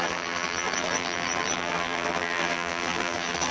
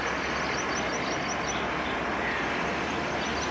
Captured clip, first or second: second